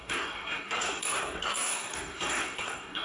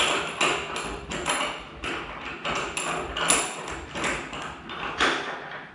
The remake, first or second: first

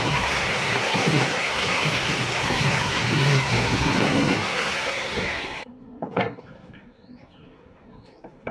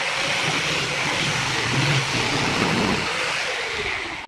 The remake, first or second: first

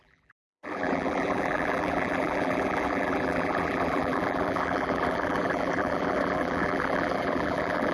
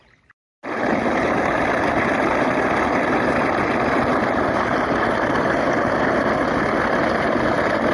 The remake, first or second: first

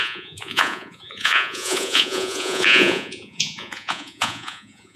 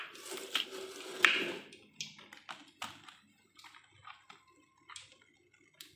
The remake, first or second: first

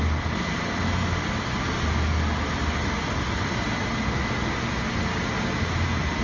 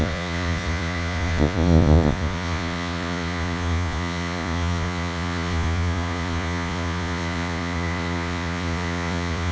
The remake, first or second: second